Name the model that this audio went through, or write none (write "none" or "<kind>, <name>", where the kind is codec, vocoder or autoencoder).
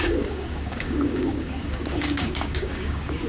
codec, DAC